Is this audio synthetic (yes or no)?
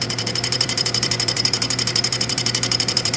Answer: yes